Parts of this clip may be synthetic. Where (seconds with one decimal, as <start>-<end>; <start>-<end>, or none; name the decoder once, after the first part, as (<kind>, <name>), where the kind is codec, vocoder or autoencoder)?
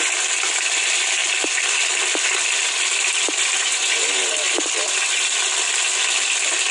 3.6-4.2 (vocoder, Vocos)